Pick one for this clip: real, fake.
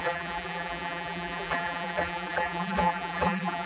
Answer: fake